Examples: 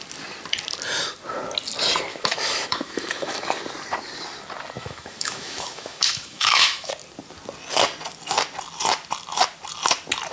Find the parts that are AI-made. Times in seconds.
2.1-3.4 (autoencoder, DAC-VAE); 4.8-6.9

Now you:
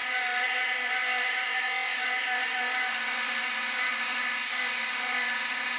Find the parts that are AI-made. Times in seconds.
0.0-5.8 (autoencoder, DAC-VAE)

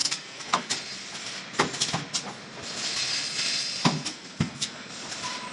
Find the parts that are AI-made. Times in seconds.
0.0-0.7 (codec, SNAC); 4.1-4.9

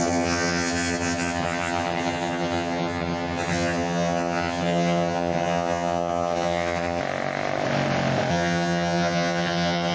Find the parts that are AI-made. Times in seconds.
0.0-7.0 (vocoder, HiFi-GAN); 8.3-9.9

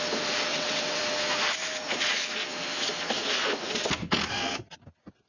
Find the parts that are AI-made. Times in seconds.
0.5-1.0 (vocoder, WaveNeXt)

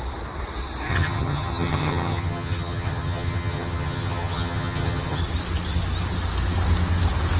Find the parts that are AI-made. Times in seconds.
0.9-5.2 (vocoder, HiFi-GAN)